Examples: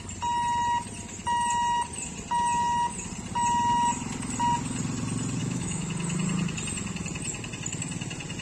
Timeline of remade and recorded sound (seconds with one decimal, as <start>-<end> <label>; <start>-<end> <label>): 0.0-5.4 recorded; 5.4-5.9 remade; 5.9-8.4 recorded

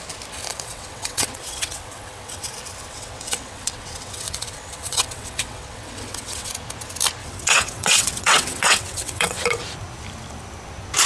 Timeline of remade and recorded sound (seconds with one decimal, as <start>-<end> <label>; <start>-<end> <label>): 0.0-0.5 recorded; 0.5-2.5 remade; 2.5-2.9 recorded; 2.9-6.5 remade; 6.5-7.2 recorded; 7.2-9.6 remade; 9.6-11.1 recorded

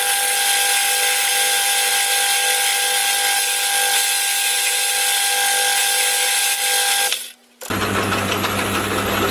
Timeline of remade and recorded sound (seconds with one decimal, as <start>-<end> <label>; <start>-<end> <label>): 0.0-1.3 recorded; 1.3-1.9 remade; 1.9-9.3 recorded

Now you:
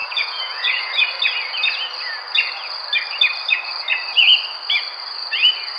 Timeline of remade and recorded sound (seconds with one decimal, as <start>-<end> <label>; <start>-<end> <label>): 0.0-0.9 remade; 0.9-5.8 recorded

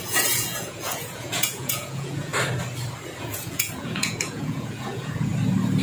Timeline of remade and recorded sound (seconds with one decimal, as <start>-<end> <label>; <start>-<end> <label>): 0.0-2.3 remade; 2.3-3.2 recorded; 3.2-5.3 remade; 5.3-5.8 recorded

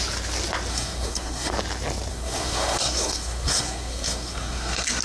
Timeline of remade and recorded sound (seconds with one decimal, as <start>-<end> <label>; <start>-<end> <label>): 0.0-0.7 recorded; 0.7-1.5 remade; 1.5-2.1 recorded; 2.1-5.0 remade

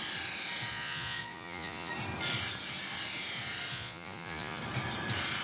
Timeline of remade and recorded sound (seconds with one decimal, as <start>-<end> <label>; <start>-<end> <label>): 0.0-0.7 recorded; 0.7-1.9 remade; 1.9-3.7 recorded; 3.7-4.6 remade; 4.6-5.4 recorded